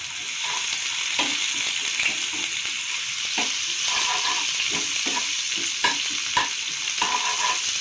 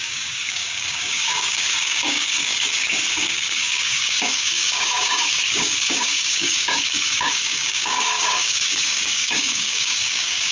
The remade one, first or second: second